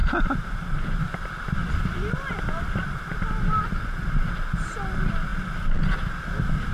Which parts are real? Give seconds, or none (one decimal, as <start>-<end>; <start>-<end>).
0.0-6.7